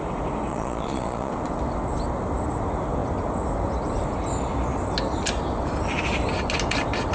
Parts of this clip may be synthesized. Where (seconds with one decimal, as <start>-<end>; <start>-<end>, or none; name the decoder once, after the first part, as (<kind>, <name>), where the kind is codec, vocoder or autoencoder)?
0.5-1.3 (vocoder, Vocos)